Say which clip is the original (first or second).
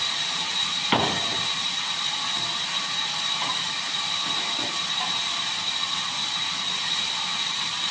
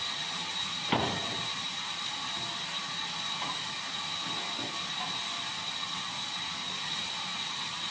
second